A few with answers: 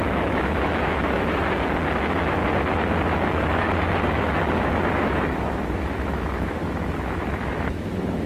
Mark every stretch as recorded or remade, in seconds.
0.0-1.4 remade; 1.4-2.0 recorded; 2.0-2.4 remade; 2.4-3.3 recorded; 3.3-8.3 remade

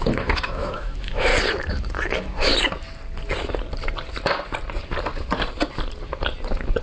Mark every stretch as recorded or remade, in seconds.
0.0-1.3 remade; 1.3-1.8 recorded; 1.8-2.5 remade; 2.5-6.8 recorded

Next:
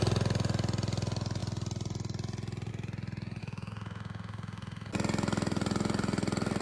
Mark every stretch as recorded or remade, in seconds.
0.0-3.4 recorded; 3.4-4.9 remade; 4.9-6.6 recorded

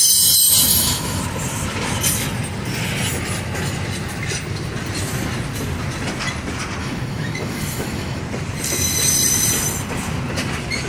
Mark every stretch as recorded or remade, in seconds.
0.0-0.7 recorded; 0.7-1.2 remade; 1.2-6.8 recorded; 6.8-8.2 remade; 8.2-10.9 recorded